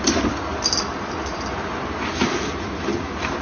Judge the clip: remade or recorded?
recorded